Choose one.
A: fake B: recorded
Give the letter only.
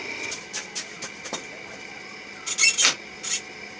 B